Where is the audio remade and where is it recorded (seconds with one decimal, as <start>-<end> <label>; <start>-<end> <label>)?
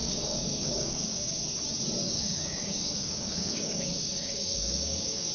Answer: 0.0-1.4 remade; 1.4-2.0 recorded; 2.0-5.3 remade